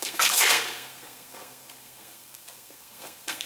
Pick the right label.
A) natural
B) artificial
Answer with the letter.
B